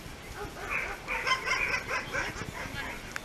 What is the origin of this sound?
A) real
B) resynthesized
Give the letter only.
A